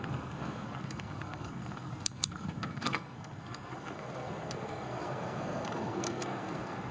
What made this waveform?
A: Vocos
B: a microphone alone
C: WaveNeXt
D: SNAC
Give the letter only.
D